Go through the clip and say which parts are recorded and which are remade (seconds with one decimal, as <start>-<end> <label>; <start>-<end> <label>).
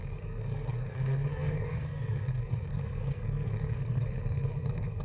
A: 0.0-5.0 remade